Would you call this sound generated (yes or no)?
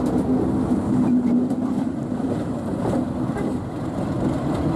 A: no